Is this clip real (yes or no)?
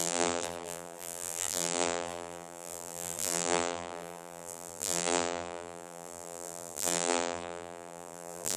no